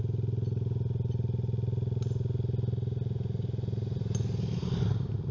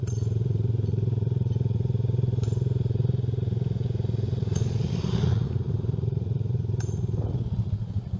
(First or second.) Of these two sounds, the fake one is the second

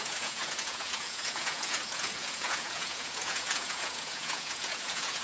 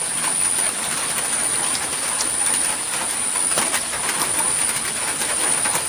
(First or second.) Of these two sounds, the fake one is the first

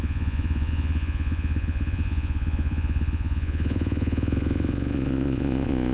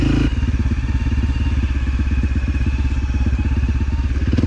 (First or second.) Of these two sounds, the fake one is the first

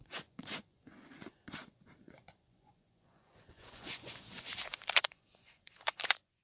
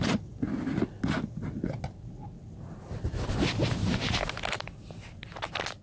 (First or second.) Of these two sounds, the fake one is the first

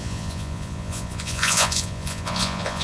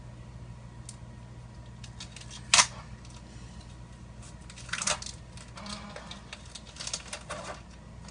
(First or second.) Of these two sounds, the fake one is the first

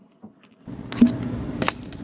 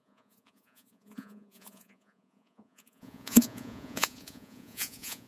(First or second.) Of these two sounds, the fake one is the second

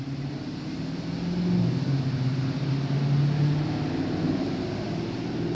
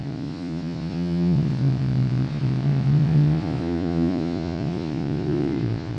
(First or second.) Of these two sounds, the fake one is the second